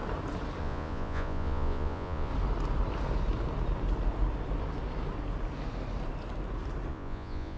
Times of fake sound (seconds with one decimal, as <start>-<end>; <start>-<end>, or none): 0.6-2.3; 6.9-7.6

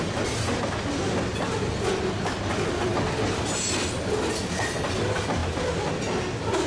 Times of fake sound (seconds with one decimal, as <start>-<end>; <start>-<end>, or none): none

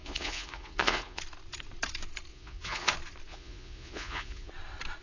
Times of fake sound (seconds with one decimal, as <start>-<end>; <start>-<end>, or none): 0.0-1.2; 2.3-2.9; 3.3-4.5